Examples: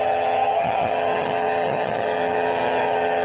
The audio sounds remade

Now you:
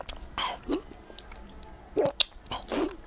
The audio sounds recorded